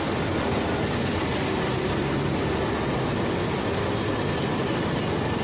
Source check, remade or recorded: recorded